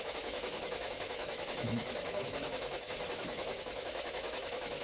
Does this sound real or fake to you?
fake